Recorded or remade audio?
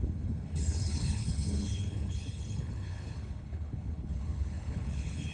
remade